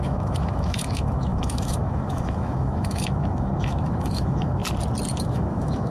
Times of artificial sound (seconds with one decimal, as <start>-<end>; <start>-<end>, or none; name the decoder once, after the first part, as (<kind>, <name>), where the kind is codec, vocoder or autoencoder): 0.0-4.6 (autoencoder, DAC-VAE); 5.1-5.9